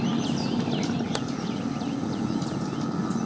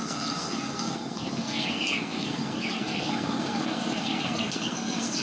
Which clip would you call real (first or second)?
first